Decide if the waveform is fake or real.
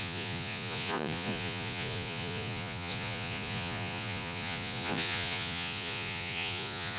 fake